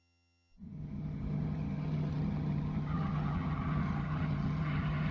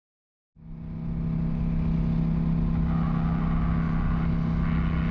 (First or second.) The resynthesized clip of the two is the first